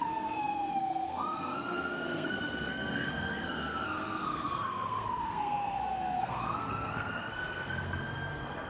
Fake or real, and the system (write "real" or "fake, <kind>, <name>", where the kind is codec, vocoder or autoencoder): fake, codec, SNAC